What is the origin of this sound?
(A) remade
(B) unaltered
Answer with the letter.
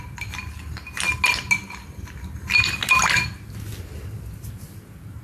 B